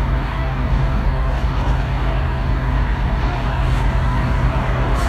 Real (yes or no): no